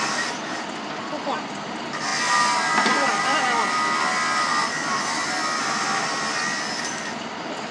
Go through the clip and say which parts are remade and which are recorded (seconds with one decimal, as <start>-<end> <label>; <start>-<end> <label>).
0.0-7.7 recorded